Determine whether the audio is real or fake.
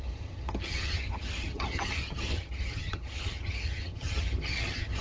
fake